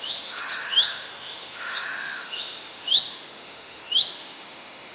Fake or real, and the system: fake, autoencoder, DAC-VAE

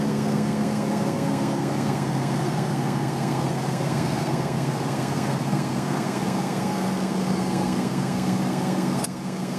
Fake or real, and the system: fake, codec, SNAC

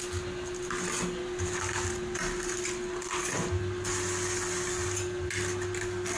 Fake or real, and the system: real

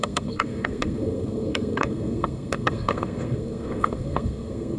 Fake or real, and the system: fake, codec, SNAC